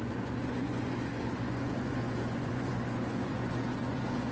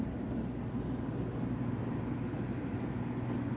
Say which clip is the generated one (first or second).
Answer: first